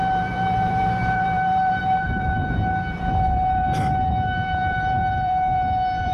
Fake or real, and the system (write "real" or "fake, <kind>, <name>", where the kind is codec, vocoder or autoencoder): fake, vocoder, BigVGAN v2